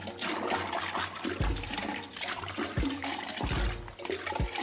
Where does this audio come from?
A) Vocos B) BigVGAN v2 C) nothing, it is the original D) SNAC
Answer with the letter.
C